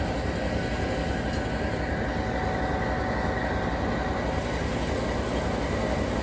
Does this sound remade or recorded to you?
recorded